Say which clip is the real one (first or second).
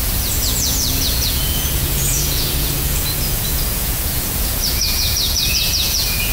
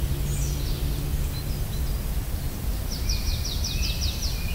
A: second